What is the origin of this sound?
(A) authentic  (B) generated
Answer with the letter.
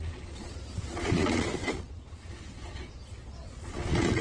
B